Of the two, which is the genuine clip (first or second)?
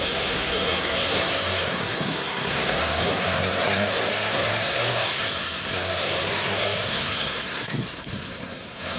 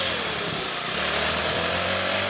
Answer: second